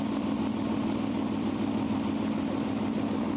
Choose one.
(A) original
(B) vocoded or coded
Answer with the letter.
A